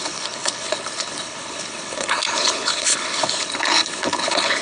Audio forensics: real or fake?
fake